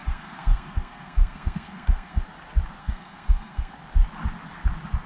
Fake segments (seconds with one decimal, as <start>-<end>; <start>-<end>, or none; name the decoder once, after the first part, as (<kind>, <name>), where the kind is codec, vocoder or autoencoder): 0.0-2.2 (codec, SNAC); 2.8-3.7